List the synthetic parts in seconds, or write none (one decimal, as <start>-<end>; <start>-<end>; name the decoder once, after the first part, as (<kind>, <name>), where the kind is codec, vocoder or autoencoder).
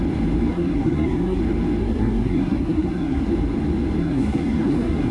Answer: 0.5-1.4 (codec, SNAC); 1.8-3.3; 4.0-5.1